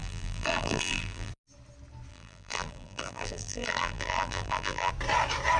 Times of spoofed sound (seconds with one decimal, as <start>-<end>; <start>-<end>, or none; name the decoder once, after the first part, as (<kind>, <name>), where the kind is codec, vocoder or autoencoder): 0.0-1.3 (vocoder, BigVGAN v2); 2.1-4.9